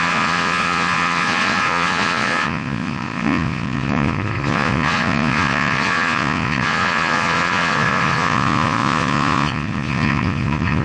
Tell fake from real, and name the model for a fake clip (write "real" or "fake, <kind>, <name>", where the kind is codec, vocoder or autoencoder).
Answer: fake, vocoder, Vocos